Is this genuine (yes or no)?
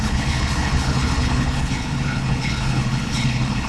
no